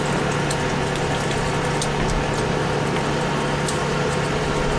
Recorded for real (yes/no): yes